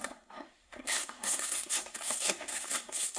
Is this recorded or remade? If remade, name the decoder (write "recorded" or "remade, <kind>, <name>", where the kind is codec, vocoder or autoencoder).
remade, codec, SNAC